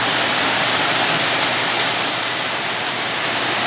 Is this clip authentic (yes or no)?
yes